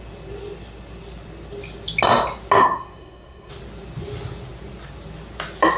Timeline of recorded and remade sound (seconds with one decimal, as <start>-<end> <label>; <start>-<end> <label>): 0.0-2.6 recorded; 2.6-3.5 remade; 3.5-5.8 recorded